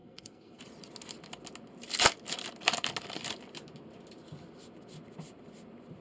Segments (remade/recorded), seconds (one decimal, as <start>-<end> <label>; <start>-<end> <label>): 0.0-0.6 remade; 0.6-6.0 recorded